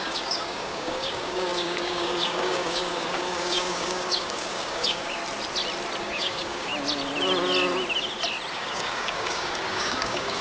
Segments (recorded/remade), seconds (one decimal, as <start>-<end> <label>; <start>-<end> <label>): 0.0-5.2 remade; 5.2-6.0 recorded; 6.0-6.7 remade; 6.7-8.5 recorded; 8.5-10.4 remade